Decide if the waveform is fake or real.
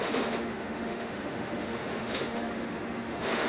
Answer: fake